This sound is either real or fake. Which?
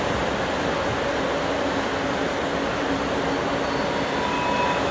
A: real